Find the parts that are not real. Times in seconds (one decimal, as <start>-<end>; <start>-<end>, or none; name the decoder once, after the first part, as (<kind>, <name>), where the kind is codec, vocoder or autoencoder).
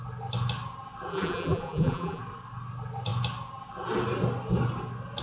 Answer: 1.1-2.2 (vocoder, BigVGAN v2)